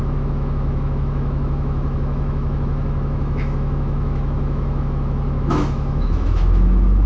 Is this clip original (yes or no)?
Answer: no